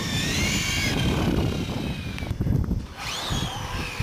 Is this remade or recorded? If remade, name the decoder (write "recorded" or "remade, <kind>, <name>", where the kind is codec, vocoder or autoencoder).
recorded